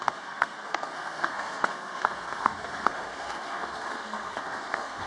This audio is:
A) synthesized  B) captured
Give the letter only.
A